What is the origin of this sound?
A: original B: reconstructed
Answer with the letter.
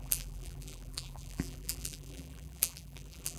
B